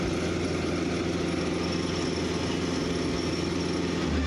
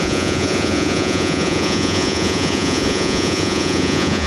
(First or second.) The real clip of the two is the first